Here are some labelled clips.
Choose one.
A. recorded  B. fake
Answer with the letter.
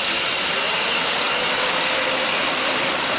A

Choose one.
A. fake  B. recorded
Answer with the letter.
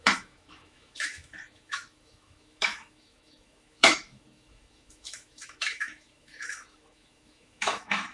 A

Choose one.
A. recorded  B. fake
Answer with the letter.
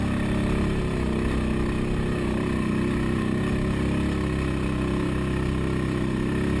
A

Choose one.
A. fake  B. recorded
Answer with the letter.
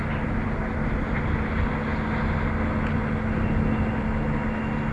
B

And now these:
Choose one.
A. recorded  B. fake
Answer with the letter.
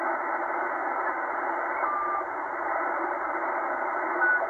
A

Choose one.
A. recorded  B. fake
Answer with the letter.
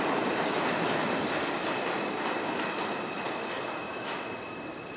A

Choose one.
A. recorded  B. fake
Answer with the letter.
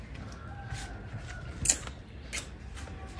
A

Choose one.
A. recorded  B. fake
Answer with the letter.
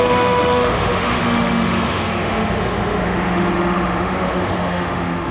B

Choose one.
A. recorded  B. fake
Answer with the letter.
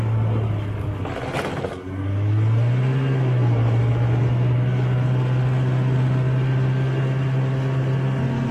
A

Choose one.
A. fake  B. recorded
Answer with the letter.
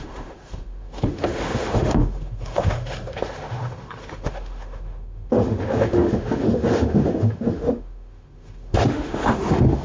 A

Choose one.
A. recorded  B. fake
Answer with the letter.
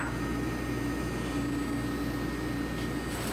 A